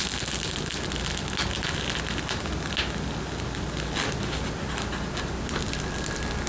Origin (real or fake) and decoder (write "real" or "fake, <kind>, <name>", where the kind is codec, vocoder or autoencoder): real